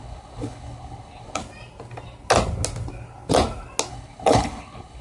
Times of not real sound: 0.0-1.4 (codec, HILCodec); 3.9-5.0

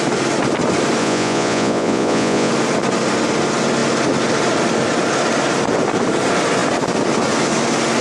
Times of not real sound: 1.0-2.5 (vocoder, Vocos)